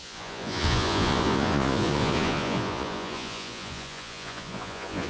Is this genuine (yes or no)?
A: no